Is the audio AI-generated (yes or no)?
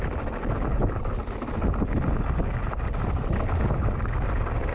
no